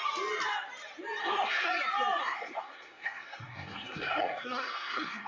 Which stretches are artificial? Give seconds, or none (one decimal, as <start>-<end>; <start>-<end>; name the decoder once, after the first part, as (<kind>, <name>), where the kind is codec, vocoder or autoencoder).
1.2-1.7 (codec, SNAC); 2.2-5.3